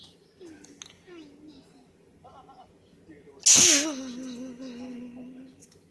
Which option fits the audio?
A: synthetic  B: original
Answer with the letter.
B